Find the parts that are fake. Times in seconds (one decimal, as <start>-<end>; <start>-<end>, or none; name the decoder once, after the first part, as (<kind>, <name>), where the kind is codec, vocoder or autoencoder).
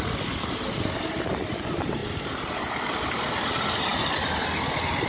none